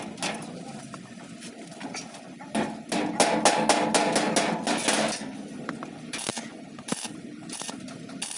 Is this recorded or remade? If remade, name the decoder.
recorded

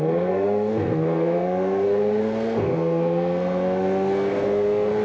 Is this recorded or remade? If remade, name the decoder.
remade, codec, SNAC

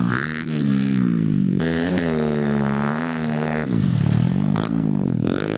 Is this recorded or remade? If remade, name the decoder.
remade, codec, SNAC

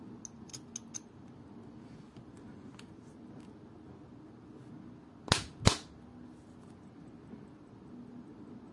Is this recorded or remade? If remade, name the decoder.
recorded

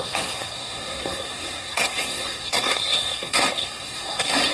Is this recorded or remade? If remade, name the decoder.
remade, codec, SNAC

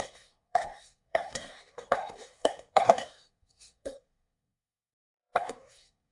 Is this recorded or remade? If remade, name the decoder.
remade, codec, SNAC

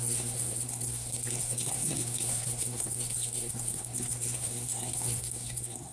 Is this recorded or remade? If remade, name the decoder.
remade, codec, SNAC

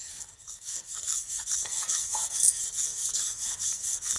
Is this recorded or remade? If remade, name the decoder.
remade, codec, SNAC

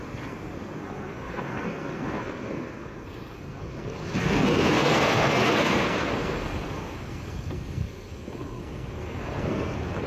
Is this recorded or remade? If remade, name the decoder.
remade, codec, SNAC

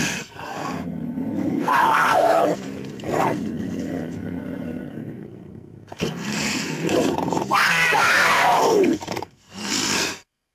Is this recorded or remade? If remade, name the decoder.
remade, codec, SNAC